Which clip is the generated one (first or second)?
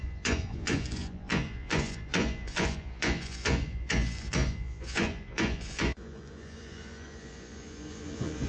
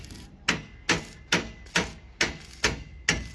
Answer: first